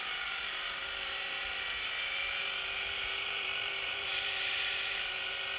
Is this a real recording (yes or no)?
no